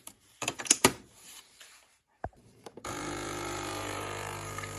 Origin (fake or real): fake